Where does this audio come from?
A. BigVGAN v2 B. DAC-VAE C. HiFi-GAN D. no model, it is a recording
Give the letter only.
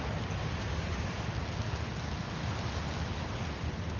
D